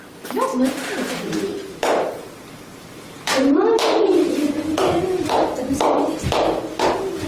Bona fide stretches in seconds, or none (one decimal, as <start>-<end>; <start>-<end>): 0.0-0.5; 1.1-1.5; 5.3-7.3